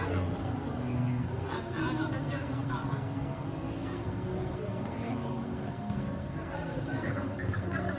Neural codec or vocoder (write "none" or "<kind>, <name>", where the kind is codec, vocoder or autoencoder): codec, SNAC